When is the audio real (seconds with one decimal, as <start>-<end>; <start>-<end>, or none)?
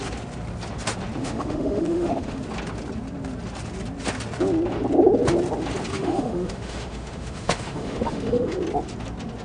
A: 0.0-1.2; 2.4-5.9; 8.6-9.4